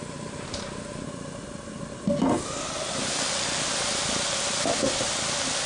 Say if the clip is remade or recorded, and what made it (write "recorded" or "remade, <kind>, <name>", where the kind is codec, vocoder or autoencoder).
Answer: recorded